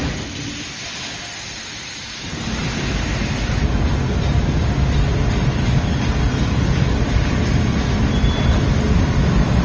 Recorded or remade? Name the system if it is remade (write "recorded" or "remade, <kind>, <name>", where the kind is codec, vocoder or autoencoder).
recorded